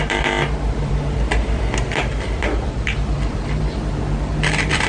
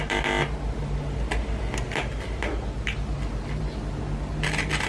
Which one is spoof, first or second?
first